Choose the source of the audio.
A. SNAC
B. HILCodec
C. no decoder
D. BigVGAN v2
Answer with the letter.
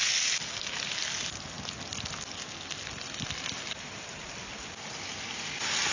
C